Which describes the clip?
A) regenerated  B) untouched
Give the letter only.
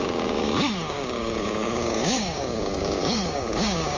A